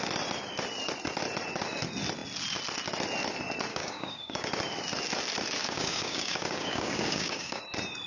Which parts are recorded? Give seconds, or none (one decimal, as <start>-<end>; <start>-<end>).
0.0-3.7; 4.5-5.6; 7.6-8.1